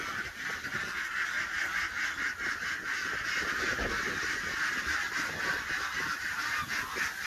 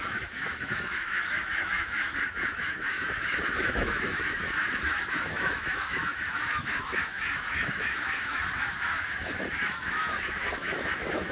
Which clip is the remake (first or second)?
second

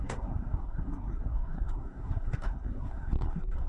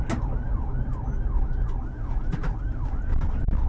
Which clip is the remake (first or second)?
first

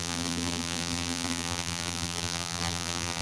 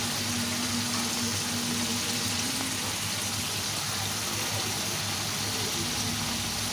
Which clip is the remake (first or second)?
first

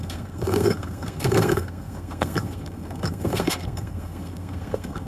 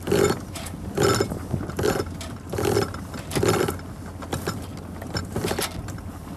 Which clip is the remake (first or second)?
first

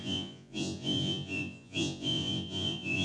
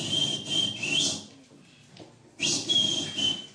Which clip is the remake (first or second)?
first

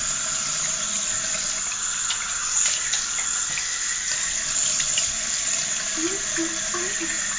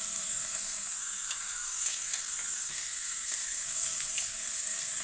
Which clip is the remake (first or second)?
second